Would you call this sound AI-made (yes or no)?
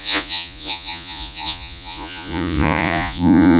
yes